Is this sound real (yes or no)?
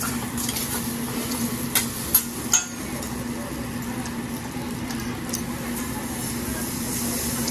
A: yes